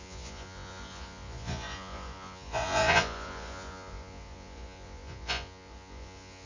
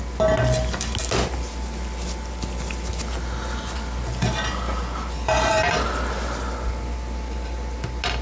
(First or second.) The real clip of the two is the second